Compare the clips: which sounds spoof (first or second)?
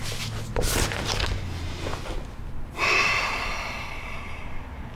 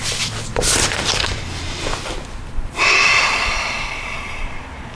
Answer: second